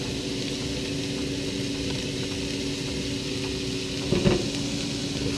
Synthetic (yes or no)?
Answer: no